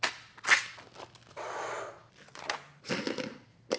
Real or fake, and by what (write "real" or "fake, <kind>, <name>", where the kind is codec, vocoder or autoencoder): real